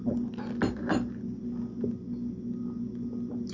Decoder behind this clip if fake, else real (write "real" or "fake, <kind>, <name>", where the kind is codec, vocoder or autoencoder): real